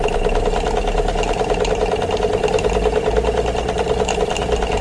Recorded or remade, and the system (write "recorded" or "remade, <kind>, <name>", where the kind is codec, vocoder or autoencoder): recorded